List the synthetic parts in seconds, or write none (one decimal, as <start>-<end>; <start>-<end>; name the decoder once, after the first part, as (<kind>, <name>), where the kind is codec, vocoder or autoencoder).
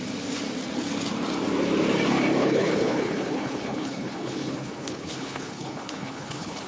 2.4-6.7 (codec, HILCodec)